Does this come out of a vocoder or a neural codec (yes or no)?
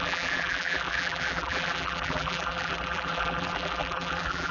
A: yes